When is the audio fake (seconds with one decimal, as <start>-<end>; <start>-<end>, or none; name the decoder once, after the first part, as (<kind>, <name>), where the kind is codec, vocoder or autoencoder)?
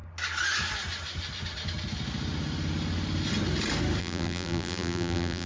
4.0-5.5 (vocoder, BigVGAN v2)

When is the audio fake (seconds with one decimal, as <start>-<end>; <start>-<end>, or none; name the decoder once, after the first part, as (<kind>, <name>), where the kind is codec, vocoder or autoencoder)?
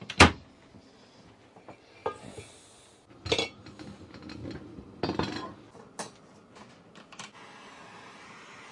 none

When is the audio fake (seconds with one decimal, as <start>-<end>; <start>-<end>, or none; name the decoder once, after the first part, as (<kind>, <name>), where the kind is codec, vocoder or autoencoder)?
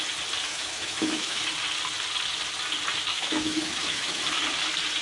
0.5-1.4 (autoencoder, DAC-VAE); 3.1-4.2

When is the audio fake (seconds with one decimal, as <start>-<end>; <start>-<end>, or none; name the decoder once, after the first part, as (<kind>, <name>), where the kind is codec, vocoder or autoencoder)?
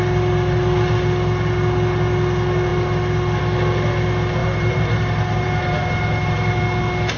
4.4-6.6 (vocoder, BigVGAN v2)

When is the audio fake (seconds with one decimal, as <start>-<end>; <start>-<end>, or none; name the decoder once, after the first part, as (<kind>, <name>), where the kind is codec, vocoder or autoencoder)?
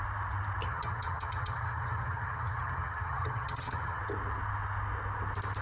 0.6-4.0 (vocoder, HiFi-GAN)